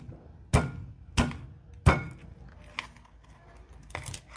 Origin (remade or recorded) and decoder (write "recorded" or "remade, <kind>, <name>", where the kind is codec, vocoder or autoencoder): recorded